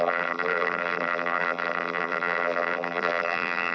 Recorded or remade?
remade